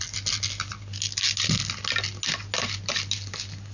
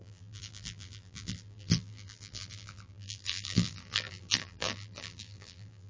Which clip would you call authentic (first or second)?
first